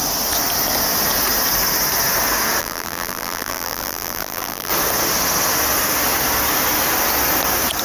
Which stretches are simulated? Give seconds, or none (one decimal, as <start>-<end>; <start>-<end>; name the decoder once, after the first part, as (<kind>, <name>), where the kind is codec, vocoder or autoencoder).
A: 2.6-4.7 (vocoder, BigVGAN v2)